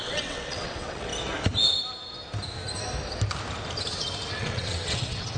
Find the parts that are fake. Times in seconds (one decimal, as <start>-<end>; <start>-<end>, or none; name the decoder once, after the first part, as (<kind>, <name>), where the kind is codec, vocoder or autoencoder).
0.0-1.1 (vocoder, WaveNeXt); 4.3-5.4